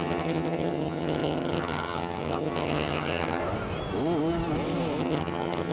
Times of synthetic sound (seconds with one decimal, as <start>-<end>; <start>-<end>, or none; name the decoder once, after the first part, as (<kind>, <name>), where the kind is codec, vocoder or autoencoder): 0.0-3.4 (vocoder, HiFi-GAN); 5.0-5.7